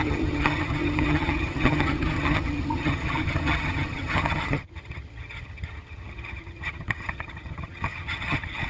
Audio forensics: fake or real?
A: fake